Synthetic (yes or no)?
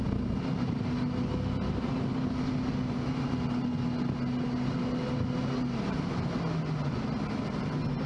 no